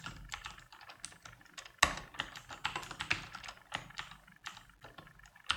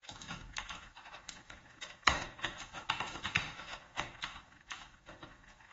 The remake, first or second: second